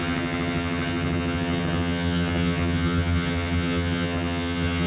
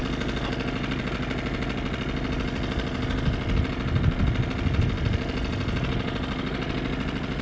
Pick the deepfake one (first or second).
first